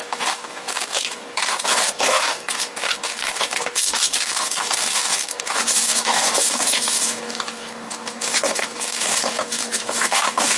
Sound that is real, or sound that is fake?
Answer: fake